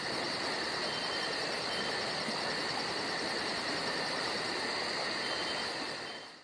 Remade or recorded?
recorded